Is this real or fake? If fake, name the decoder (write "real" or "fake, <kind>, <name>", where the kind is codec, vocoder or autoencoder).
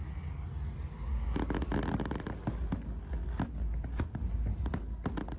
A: real